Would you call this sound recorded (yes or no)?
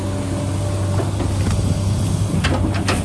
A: yes